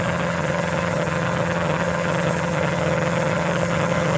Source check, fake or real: fake